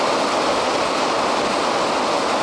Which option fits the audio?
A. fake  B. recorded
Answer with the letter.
B